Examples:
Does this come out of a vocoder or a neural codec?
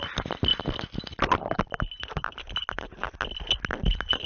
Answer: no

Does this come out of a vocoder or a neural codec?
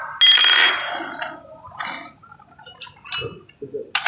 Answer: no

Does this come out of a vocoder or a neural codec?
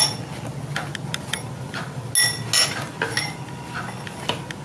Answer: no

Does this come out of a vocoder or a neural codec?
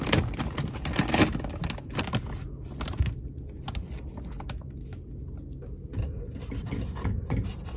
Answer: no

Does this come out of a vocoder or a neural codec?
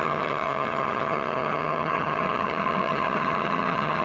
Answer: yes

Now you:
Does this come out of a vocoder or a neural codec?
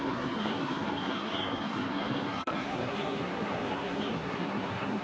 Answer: yes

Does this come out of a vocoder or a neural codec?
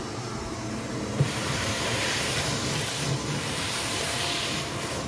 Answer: yes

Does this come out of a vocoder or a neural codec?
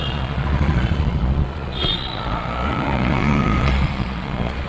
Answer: yes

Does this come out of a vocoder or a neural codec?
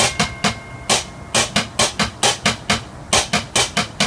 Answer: no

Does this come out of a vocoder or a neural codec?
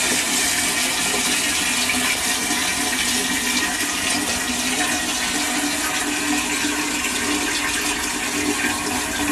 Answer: no